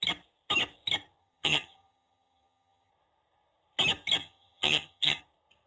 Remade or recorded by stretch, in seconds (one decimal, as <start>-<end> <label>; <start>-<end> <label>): 0.0-1.2 recorded; 1.2-2.9 remade; 2.9-4.2 recorded; 4.2-5.2 remade; 5.2-5.7 recorded